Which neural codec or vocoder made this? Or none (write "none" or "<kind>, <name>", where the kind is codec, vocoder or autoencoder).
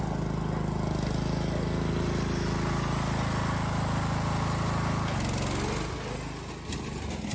none